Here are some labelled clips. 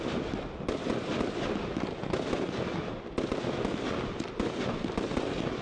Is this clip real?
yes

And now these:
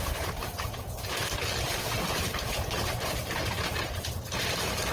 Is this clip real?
no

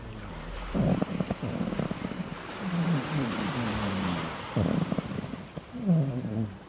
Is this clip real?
no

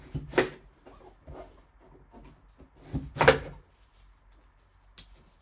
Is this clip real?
yes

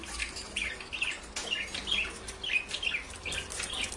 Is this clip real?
yes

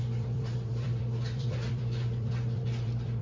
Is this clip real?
no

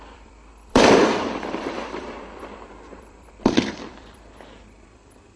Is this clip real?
no